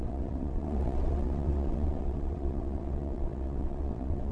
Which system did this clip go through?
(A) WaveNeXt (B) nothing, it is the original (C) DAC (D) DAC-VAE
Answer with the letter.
A